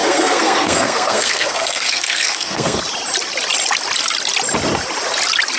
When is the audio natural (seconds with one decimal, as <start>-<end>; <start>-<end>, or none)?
2.8-5.6